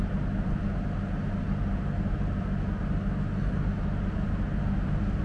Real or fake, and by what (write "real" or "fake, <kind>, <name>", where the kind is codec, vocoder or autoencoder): real